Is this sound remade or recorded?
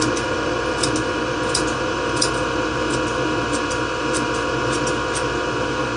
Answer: recorded